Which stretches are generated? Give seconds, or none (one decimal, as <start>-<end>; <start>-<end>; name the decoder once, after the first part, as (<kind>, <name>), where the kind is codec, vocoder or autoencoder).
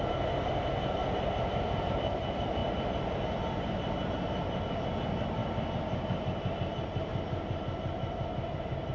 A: 0.0-2.6 (vocoder, BigVGAN v2); 4.7-7.1; 8.5-8.9